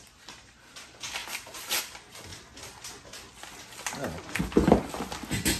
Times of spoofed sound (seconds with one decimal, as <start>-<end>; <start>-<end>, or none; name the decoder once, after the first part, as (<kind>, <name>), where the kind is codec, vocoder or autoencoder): none